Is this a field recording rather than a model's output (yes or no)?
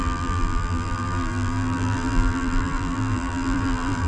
no